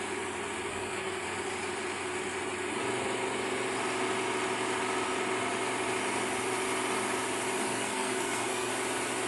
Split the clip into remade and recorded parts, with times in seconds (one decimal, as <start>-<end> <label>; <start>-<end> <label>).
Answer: 0.0-0.7 recorded; 0.7-1.2 remade; 1.2-7.6 recorded; 7.6-8.7 remade; 8.7-9.3 recorded